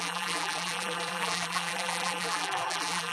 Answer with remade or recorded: remade